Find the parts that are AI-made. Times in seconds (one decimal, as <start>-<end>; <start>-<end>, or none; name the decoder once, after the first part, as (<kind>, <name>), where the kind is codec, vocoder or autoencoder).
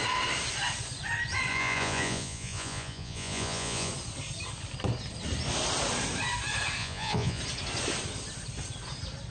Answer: 1.5-3.9 (vocoder, Vocos); 6.8-7.4